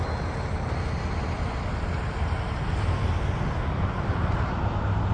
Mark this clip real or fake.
real